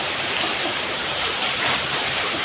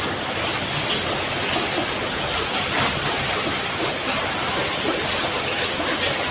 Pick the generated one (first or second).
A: first